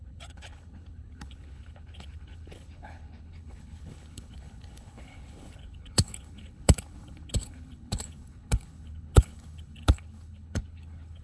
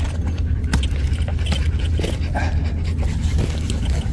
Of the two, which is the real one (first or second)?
second